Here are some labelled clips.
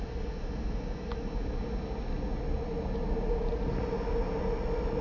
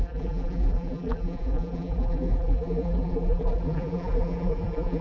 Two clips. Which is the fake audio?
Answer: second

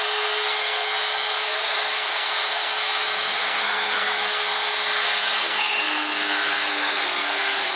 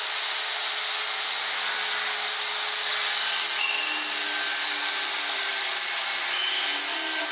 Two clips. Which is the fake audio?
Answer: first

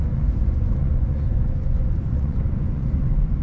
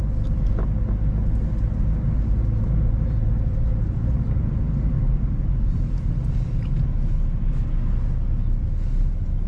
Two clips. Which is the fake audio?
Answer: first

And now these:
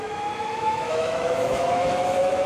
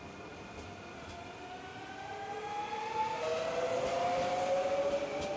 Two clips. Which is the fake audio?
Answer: first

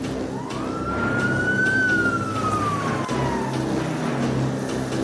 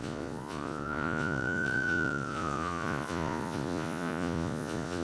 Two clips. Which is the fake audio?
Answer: second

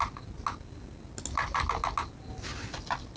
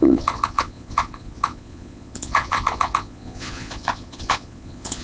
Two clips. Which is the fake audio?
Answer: second